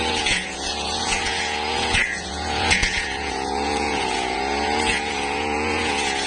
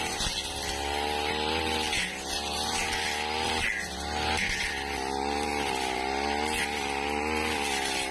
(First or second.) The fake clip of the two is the first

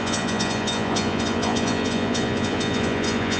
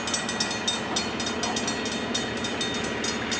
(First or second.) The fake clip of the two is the first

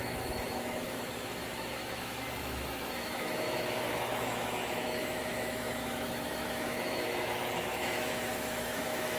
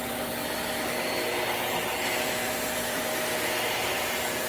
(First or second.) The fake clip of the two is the first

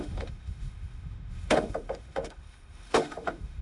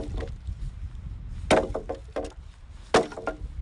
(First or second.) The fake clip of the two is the first